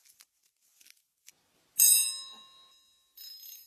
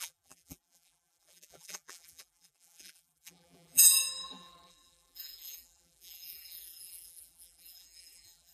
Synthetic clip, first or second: second